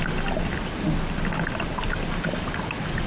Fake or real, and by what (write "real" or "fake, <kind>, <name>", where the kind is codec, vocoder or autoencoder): real